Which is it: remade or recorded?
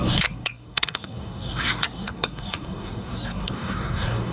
remade